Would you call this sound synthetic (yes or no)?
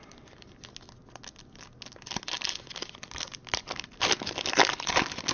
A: no